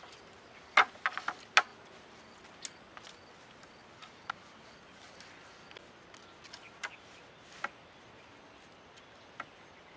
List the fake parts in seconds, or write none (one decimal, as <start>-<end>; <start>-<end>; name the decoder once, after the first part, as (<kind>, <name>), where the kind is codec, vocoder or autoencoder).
none